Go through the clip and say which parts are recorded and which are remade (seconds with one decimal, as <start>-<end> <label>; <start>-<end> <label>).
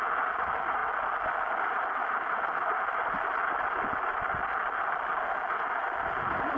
0.0-6.6 recorded